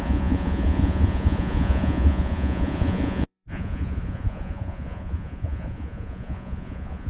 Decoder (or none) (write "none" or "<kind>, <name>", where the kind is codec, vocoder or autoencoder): vocoder, Vocos